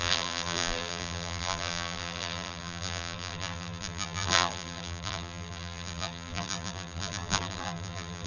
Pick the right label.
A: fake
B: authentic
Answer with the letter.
A